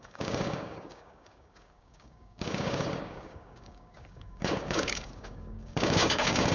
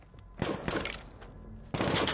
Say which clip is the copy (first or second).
first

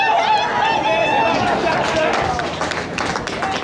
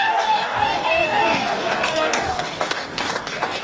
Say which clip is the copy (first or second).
second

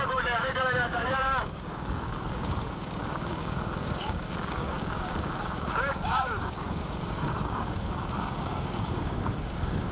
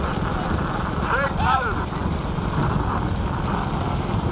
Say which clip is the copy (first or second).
first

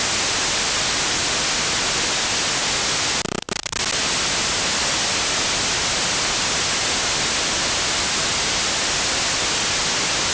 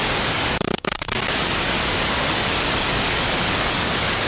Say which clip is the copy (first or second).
second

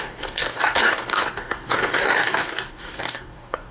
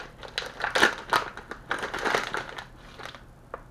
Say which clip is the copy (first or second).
first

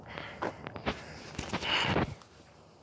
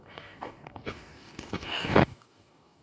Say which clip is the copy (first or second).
second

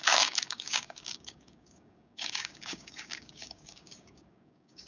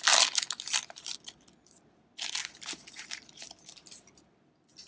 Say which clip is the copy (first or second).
first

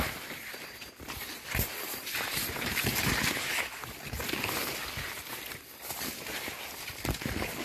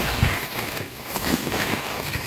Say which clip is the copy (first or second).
second